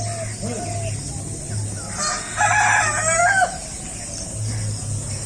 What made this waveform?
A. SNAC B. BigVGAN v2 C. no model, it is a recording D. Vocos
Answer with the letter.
C